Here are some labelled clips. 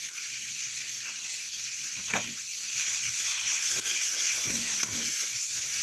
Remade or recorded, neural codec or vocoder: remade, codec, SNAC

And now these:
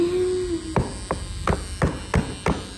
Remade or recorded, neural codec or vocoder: recorded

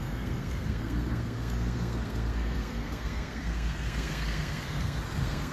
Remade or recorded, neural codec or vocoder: remade, codec, SNAC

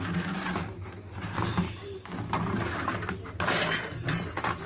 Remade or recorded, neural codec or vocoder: recorded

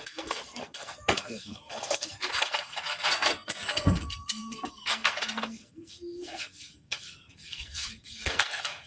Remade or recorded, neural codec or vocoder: remade, codec, SNAC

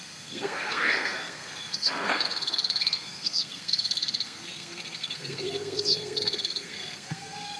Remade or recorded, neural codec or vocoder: remade, codec, SNAC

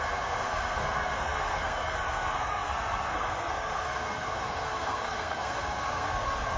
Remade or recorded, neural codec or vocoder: remade, codec, SNAC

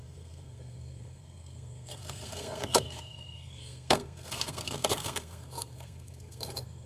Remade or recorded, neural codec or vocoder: remade, codec, SNAC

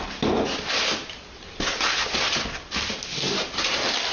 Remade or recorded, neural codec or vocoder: recorded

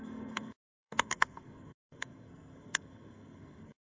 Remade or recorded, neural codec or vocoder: remade, codec, SNAC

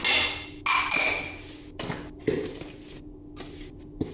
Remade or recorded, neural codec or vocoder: recorded